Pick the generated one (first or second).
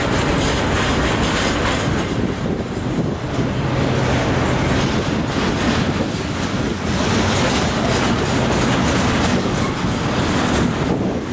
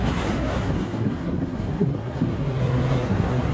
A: second